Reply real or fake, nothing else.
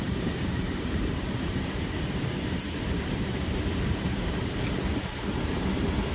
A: fake